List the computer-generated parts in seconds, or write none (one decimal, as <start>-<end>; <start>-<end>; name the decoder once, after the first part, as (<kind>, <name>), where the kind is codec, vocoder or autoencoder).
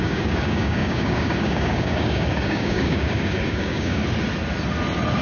0.0-4.0 (codec, DAC)